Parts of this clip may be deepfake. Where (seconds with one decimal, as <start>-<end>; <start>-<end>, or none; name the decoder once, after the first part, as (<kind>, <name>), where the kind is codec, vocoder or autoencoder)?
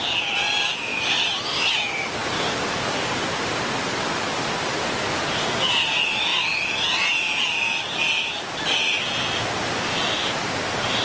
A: 0.9-1.7 (vocoder, BigVGAN v2)